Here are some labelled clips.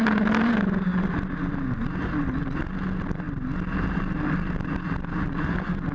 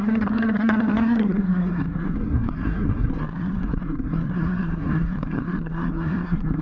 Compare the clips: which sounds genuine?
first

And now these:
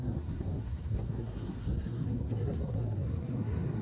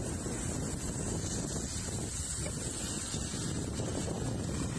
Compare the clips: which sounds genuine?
second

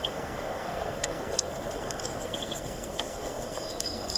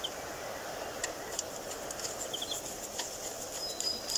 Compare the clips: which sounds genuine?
second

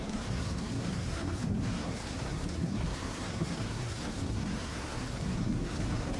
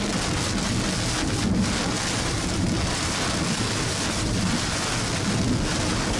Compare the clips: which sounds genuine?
second